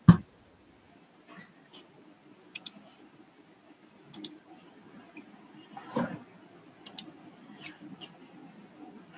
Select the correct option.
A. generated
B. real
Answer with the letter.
B